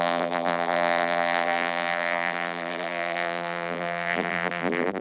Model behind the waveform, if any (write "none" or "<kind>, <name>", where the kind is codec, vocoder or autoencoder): vocoder, BigVGAN v2